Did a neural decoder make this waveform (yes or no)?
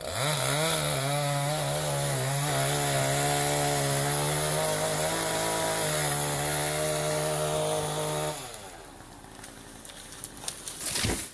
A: no